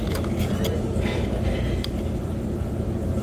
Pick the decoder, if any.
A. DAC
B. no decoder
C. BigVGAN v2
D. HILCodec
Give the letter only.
B